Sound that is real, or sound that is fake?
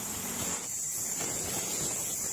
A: fake